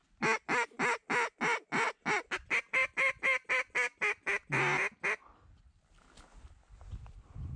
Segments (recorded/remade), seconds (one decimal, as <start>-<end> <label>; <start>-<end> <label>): 0.0-7.6 recorded